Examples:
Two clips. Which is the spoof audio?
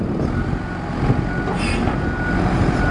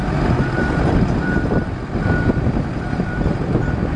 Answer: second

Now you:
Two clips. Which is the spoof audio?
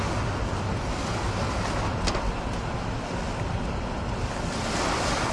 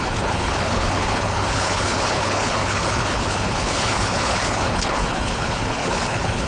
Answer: second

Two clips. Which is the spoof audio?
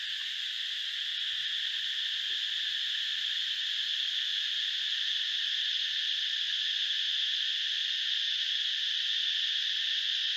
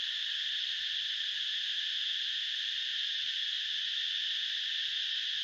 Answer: second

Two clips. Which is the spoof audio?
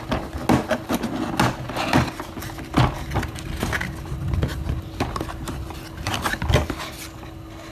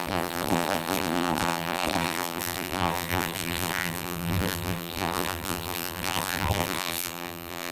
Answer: second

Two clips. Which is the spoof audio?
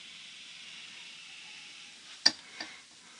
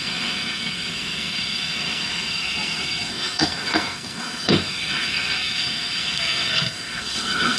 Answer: second